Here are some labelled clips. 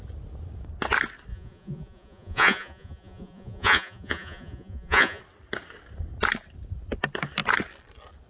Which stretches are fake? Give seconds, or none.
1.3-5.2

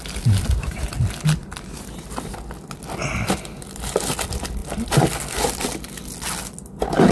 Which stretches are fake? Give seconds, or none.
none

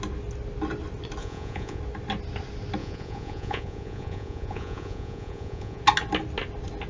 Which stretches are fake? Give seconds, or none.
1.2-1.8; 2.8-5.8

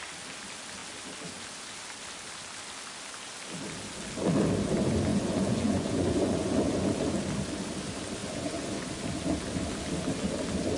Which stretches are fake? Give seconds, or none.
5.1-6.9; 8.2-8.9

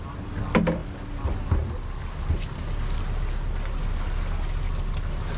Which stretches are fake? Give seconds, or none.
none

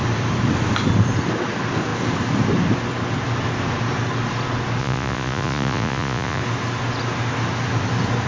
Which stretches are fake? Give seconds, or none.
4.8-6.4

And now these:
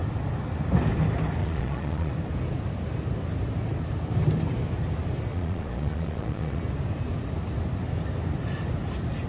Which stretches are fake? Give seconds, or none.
1.4-2.1; 5.3-6.6